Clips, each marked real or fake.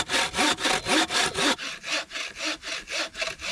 real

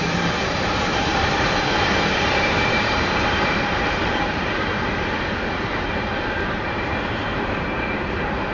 fake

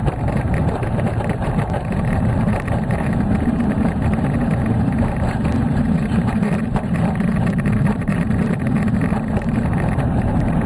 fake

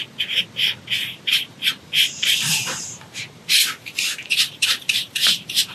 fake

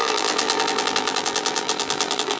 fake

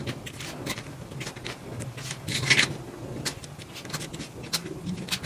real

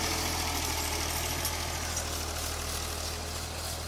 real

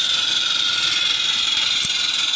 fake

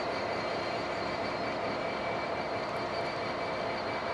fake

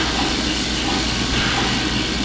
real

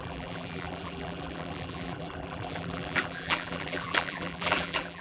fake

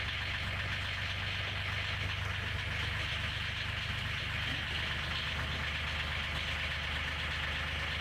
real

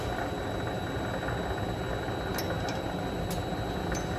real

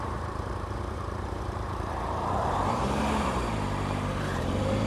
fake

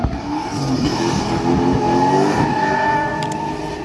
real